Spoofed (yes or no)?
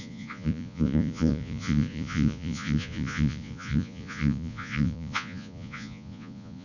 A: yes